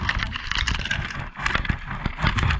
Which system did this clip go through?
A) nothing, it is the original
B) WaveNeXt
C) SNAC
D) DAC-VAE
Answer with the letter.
A